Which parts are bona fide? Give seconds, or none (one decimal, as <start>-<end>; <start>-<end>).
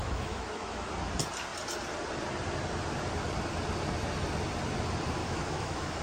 0.9-5.2